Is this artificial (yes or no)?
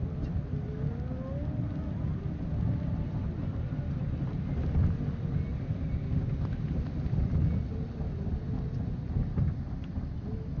no